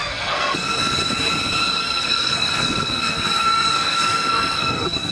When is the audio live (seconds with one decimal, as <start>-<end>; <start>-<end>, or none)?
0.7-1.8